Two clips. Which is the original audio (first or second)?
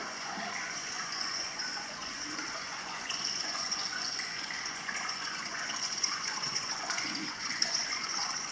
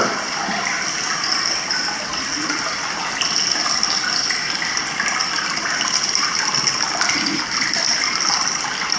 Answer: second